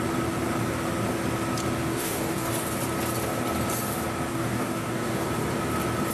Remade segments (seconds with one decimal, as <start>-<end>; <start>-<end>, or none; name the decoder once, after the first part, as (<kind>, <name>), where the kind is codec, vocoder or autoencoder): 1.9-2.5 (codec, DAC); 4.3-5.3